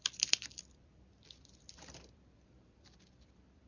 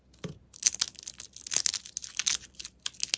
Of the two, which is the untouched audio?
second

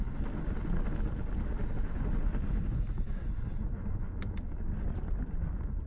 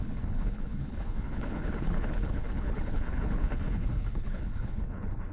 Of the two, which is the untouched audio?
first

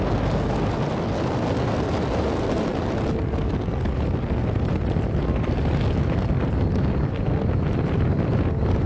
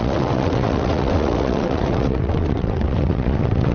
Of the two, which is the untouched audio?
first